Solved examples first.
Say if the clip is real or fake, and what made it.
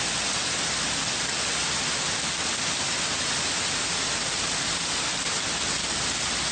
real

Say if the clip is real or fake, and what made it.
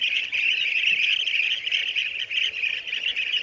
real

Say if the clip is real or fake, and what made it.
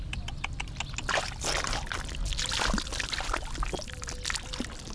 real